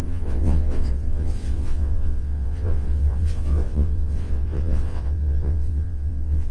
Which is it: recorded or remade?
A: remade